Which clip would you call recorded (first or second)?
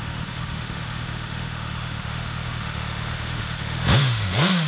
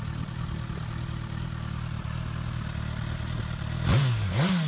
second